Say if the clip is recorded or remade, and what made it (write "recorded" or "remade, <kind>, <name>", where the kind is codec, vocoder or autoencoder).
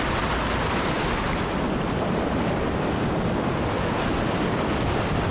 recorded